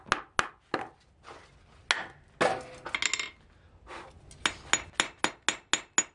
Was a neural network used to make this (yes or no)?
no